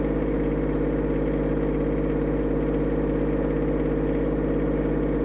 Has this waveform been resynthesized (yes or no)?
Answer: no